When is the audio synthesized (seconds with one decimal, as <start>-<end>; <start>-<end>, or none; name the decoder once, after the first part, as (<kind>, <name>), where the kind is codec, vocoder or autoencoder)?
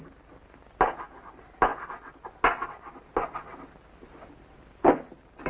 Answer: none